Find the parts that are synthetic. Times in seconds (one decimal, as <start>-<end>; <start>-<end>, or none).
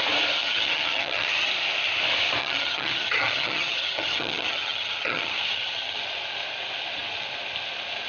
0.4-1.5; 2.4-6.0